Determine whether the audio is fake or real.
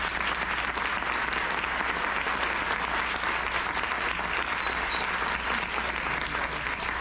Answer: real